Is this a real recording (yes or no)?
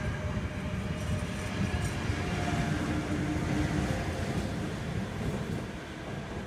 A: yes